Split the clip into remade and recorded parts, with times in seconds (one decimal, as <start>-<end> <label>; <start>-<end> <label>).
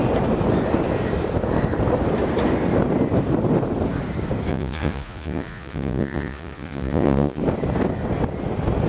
0.0-4.5 recorded; 4.5-7.4 remade; 7.4-8.9 recorded